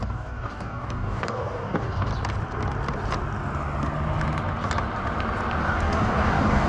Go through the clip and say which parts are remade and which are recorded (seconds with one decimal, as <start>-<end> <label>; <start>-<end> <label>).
0.0-2.1 remade; 2.1-5.6 recorded; 5.6-6.7 remade